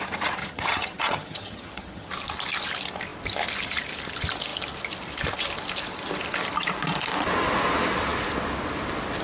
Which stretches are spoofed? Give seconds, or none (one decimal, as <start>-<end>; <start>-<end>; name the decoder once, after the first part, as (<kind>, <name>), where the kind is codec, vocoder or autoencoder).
0.4-2.1 (vocoder, HiFi-GAN)